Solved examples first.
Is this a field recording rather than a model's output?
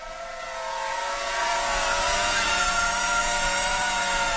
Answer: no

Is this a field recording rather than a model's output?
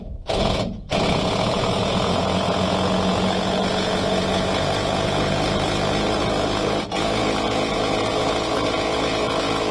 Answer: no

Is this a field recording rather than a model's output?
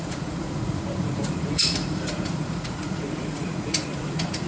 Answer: no